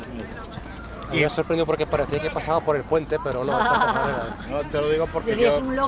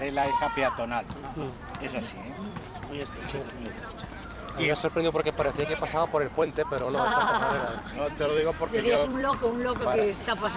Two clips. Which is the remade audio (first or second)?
second